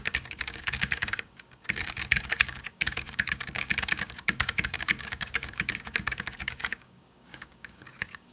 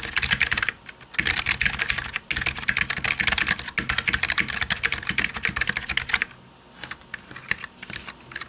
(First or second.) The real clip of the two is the second